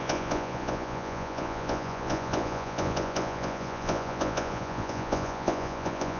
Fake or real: fake